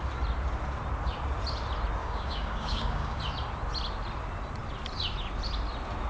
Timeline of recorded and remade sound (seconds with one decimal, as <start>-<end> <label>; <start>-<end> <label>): 0.0-2.0 recorded; 2.0-3.2 remade; 3.2-6.1 recorded